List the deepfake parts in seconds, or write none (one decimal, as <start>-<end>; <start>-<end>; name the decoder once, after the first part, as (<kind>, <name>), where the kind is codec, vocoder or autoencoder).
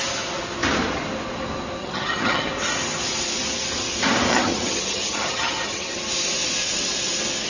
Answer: 1.8-2.5 (vocoder, HiFi-GAN); 4.3-6.0